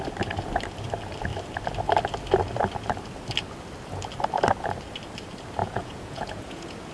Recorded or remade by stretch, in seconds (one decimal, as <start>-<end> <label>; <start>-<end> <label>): 0.0-5.6 recorded; 5.6-6.9 remade